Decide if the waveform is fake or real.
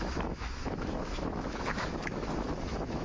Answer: fake